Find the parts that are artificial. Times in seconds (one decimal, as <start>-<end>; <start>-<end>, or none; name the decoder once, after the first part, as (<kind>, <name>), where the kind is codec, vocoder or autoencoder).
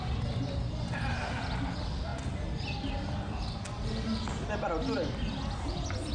none